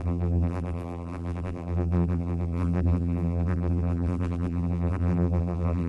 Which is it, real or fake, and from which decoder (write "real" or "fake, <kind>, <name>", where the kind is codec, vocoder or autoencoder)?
fake, vocoder, BigVGAN v2